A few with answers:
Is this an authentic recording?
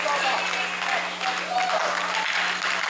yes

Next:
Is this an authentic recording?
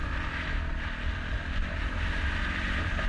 no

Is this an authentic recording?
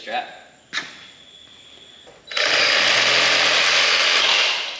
yes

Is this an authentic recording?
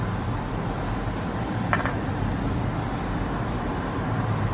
yes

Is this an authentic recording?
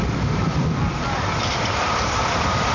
no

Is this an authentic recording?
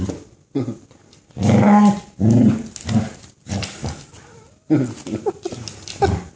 yes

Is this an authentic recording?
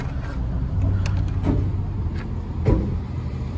yes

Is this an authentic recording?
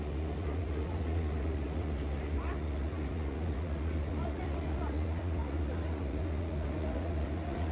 no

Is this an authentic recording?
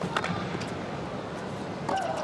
yes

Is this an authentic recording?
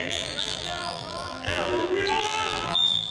no